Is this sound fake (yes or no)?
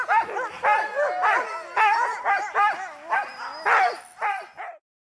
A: no